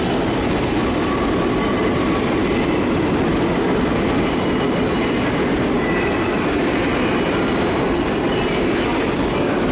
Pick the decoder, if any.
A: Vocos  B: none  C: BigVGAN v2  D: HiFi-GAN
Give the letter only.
B